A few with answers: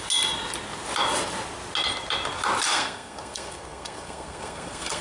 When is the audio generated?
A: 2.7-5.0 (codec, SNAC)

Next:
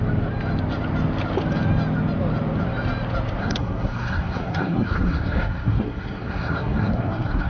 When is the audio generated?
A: 3.4-7.5 (codec, SNAC)

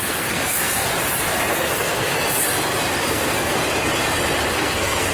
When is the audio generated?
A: 0.0-0.9 (codec, SNAC); 1.5-2.1; 3.1-3.6; 4.5-5.1

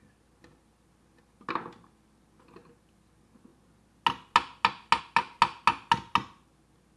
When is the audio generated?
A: none

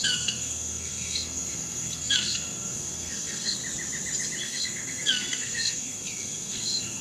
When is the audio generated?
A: 0.0-3.6 (codec, SNAC); 4.4-7.0